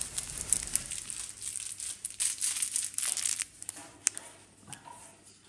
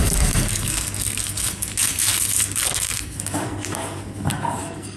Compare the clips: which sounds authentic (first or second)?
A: first